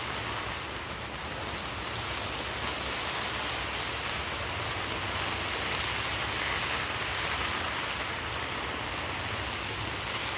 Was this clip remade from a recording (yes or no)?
no